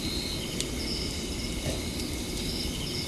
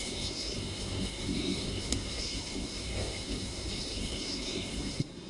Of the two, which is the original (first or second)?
first